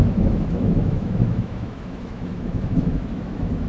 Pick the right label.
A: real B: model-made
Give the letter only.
B